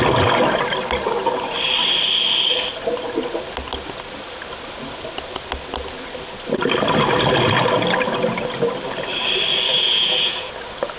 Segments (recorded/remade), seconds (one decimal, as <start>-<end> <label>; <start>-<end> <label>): 0.0-9.7 recorded; 9.7-10.5 remade; 10.5-11.0 recorded

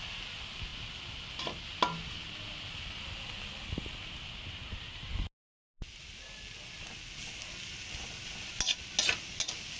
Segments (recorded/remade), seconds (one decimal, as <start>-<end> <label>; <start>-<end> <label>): 0.0-9.8 recorded